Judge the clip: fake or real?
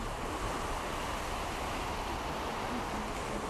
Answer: real